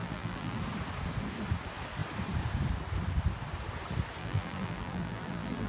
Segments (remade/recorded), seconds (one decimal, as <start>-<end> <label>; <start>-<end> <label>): 0.0-0.6 remade; 0.6-4.2 recorded; 4.2-5.7 remade